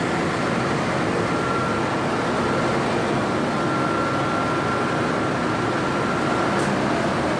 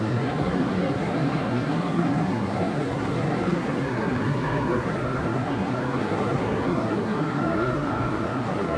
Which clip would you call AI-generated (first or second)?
second